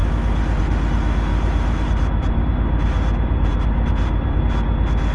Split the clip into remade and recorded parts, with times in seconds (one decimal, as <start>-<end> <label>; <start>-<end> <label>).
0.0-1.3 recorded; 1.3-4.4 remade; 4.4-5.1 recorded